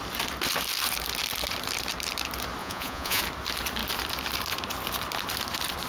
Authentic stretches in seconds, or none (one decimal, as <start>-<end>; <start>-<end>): 0.0-2.6; 3.2-5.9